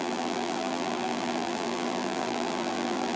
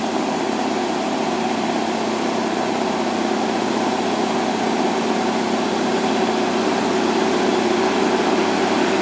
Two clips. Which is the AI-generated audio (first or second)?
first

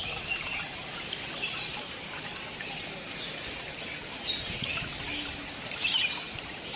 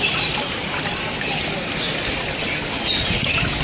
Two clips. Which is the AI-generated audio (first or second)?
first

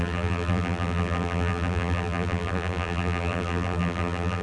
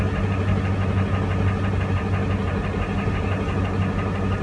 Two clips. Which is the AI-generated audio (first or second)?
first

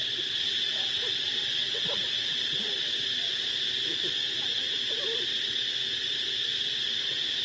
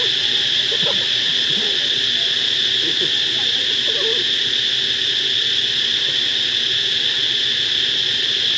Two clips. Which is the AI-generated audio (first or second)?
first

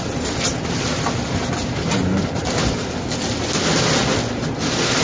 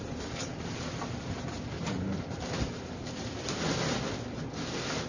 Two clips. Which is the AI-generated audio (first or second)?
second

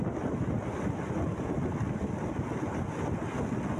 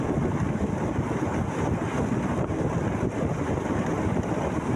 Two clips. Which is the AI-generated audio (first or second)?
second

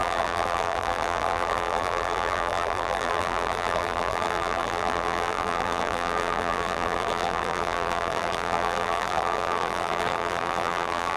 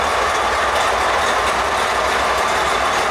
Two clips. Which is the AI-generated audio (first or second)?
first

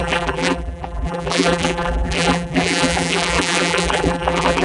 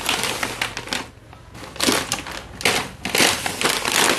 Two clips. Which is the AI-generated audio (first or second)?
first